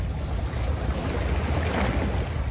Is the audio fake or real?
real